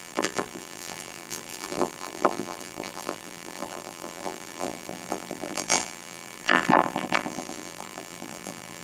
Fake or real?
fake